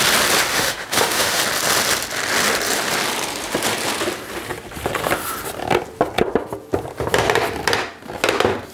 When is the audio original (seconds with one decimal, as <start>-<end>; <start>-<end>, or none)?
0.0-0.5; 1.4-8.7